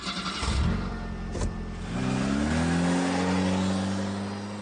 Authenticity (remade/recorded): recorded